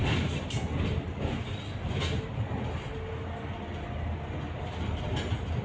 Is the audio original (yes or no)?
yes